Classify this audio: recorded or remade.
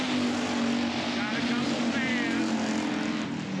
recorded